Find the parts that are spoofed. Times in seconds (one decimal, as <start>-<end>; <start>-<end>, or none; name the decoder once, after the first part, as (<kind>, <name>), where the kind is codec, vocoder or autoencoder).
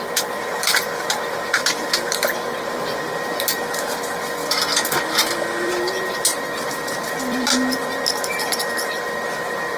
0.0-4.4 (vocoder, BigVGAN v2); 5.6-9.8